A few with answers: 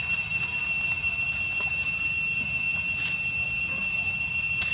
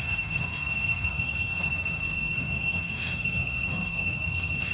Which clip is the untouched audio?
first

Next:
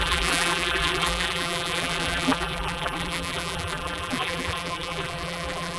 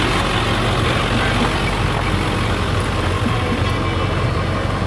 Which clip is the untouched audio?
second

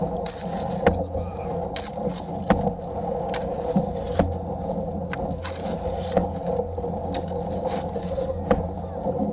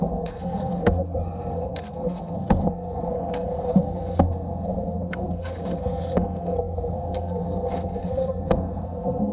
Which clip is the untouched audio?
first